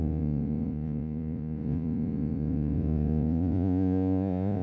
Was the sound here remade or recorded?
remade